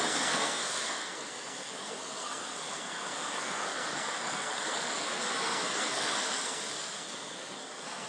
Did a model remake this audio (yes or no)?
yes